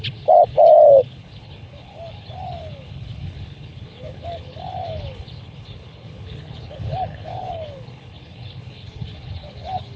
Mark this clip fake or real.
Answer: fake